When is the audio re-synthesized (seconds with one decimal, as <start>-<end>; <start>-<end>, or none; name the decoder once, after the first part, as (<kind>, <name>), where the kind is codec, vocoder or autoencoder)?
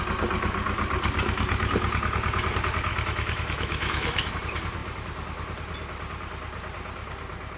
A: 2.9-4.3 (autoencoder, DAC-VAE)